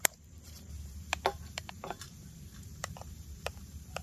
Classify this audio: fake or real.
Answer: fake